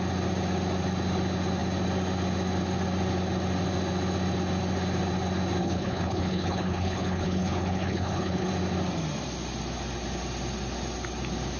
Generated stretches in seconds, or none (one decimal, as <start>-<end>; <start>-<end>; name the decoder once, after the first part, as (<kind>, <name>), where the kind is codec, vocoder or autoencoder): 5.6-8.5 (codec, HILCodec)